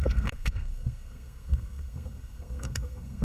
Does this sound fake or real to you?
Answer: fake